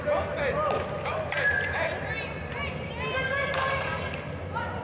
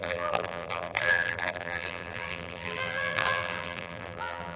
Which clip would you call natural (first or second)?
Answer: first